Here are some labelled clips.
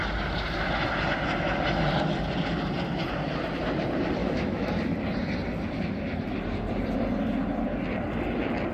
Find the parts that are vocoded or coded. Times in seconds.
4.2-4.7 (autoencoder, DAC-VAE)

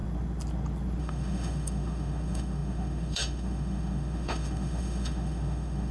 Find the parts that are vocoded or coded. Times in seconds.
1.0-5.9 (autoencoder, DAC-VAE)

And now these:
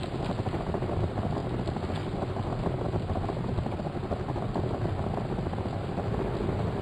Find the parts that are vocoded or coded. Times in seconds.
none

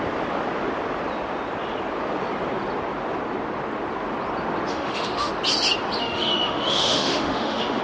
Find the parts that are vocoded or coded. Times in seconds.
4.7-5.3 (autoencoder, DAC-VAE); 6.0-7.8

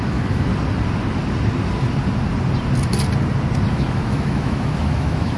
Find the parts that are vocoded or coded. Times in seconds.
0.0-0.5 (autoencoder, DAC-VAE); 3.7-5.4